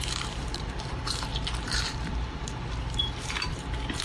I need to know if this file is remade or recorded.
remade